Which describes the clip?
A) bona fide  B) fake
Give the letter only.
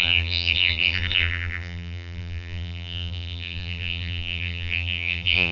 B